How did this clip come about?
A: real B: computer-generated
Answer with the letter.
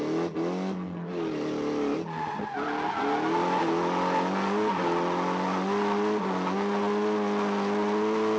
A